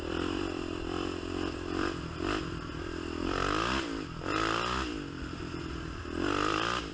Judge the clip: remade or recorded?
remade